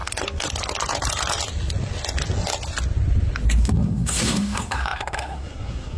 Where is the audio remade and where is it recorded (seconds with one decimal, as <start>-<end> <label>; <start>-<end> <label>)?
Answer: 0.0-3.6 recorded; 3.6-6.0 remade